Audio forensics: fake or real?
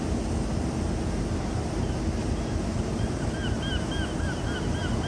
real